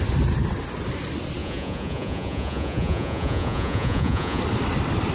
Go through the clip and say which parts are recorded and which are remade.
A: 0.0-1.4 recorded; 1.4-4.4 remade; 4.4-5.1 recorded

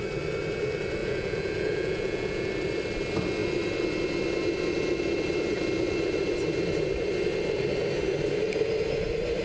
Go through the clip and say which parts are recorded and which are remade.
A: 0.0-1.0 recorded; 1.0-2.5 remade; 2.5-9.4 recorded

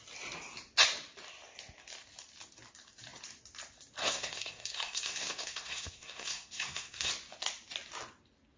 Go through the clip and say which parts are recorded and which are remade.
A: 0.0-4.0 recorded; 4.0-7.1 remade; 7.1-8.6 recorded

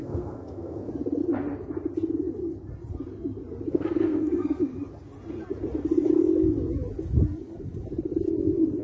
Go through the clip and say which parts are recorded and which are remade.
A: 0.0-0.9 remade; 0.9-3.7 recorded; 3.7-4.7 remade; 4.7-8.8 recorded